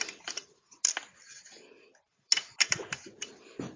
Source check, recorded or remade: recorded